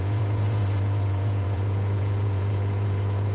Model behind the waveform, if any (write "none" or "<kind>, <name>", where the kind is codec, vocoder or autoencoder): vocoder, Vocos